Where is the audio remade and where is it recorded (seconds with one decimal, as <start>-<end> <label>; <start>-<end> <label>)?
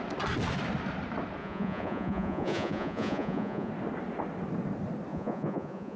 0.0-1.4 recorded; 1.4-3.7 remade; 3.7-5.1 recorded; 5.1-6.0 remade